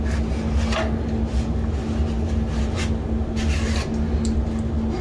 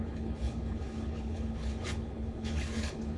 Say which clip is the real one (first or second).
first